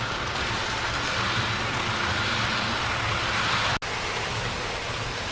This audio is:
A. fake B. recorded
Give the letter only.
B